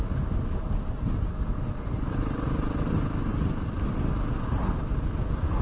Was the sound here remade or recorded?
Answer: recorded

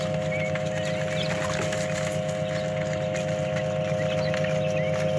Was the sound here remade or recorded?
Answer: recorded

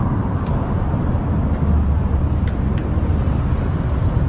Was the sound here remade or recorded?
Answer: recorded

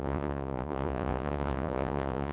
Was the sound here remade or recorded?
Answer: remade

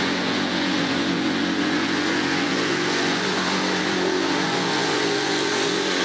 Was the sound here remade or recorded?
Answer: remade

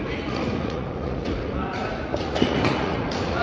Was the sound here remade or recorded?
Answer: remade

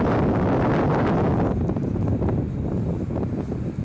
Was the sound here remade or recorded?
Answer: recorded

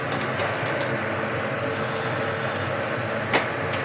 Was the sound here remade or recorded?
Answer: recorded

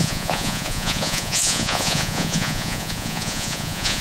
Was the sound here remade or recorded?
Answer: remade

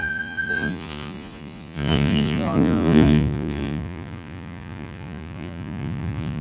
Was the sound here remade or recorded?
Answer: remade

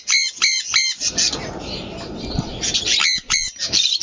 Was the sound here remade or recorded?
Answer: recorded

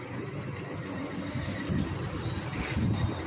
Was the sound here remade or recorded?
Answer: recorded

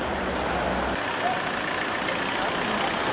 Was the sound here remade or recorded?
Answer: recorded